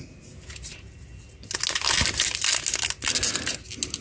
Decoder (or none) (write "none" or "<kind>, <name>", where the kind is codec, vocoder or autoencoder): none